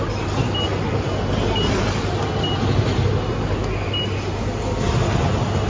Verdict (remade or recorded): recorded